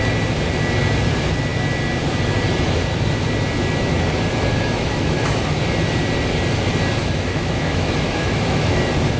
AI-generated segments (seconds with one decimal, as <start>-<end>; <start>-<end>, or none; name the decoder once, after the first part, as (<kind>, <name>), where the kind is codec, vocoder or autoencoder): 4.5-5.6 (autoencoder, DAC-VAE); 7.0-9.2